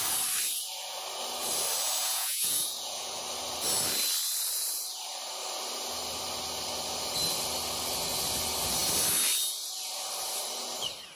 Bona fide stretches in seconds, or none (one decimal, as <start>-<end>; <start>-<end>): 0.0-2.0; 3.2-11.2